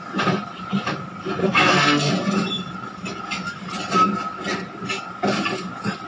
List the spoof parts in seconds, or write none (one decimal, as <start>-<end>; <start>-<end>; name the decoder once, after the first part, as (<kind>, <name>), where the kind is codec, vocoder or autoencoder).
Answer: 1.4-2.1 (codec, SNAC)